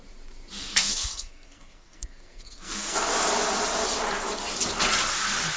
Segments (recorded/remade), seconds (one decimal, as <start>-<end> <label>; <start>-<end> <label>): 0.0-0.6 recorded; 0.6-3.1 remade; 3.1-5.6 recorded